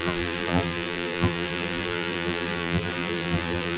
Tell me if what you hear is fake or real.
fake